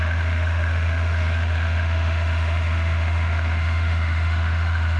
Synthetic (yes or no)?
yes